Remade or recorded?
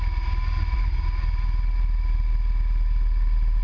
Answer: recorded